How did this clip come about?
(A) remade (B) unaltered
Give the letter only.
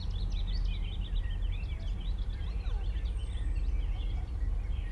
B